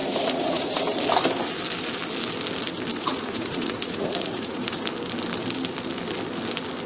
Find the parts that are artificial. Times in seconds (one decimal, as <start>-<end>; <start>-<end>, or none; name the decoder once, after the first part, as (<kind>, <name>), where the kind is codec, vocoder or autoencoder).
0.0-1.0 (vocoder, Vocos); 2.9-4.8